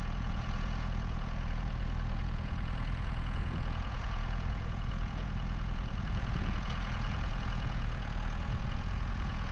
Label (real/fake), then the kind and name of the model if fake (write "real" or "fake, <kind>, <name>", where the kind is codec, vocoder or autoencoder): fake, vocoder, Vocos